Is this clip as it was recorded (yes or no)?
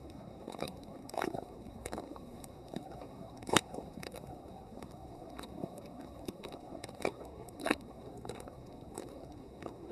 no